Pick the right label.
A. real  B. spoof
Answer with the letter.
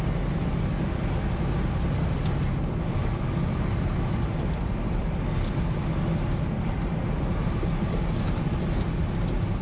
A